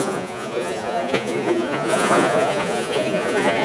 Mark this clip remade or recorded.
remade